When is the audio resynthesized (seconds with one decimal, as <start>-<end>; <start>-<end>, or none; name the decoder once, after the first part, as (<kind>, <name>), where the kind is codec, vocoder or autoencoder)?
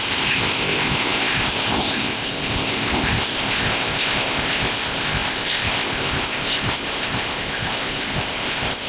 0.0-8.9 (codec, ZipCodec)